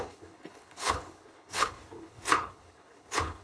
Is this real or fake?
fake